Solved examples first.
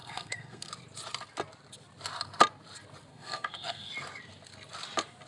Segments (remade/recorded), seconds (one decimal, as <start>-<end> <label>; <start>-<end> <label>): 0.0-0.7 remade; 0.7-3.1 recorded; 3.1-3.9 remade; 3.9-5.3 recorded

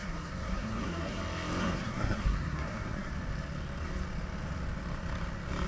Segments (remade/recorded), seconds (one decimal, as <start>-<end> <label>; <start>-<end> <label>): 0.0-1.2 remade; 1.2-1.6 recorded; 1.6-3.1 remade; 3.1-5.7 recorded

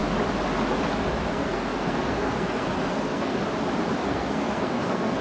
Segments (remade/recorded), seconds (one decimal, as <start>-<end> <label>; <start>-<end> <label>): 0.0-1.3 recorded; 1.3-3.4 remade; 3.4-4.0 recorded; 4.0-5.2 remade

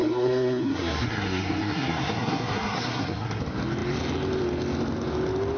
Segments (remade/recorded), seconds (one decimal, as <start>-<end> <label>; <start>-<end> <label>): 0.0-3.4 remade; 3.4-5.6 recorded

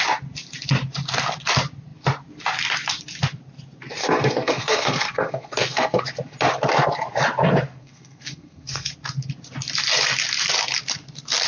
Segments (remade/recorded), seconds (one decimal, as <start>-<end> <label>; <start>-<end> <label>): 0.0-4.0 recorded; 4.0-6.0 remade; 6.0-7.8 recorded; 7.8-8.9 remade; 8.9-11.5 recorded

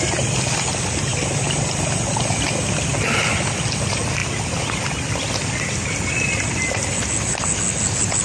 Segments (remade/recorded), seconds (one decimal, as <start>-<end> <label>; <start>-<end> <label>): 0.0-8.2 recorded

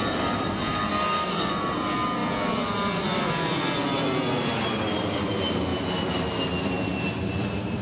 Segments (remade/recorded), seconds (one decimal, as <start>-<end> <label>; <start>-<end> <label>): 0.0-0.9 recorded; 0.9-1.5 remade; 1.5-7.8 recorded